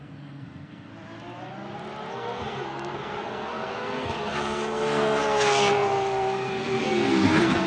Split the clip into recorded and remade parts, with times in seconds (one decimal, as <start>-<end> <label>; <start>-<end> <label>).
0.0-0.9 remade; 0.9-2.1 recorded; 2.1-7.7 remade